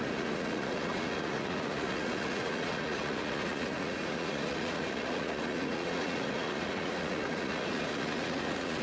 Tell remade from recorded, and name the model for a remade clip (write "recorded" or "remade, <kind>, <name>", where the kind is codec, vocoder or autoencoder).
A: remade, vocoder, Vocos